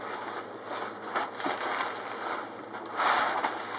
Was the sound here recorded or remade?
recorded